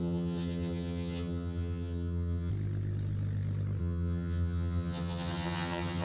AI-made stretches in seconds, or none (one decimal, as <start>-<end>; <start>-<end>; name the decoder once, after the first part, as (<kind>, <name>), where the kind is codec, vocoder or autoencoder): 0.0-2.5 (vocoder, HiFi-GAN); 3.8-6.0